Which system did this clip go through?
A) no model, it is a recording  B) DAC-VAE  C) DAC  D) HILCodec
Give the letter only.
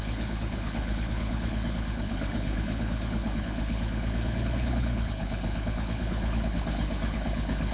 D